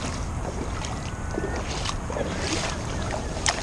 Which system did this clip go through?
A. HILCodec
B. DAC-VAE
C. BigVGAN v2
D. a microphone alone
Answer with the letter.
D